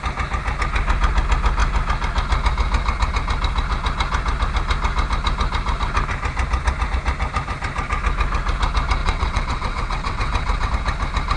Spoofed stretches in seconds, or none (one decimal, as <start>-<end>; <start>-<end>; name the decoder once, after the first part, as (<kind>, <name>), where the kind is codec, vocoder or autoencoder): 9.0-10.7 (vocoder, WaveNeXt)